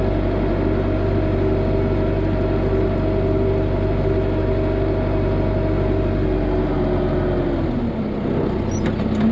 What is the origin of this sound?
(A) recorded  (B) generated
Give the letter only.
A